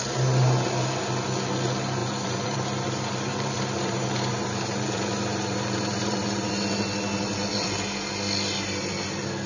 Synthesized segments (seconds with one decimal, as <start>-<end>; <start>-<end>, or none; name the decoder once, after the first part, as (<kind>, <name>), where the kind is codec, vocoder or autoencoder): 2.0-6.5 (vocoder, BigVGAN v2)